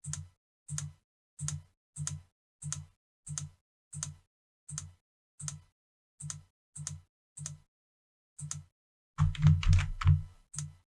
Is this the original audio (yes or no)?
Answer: yes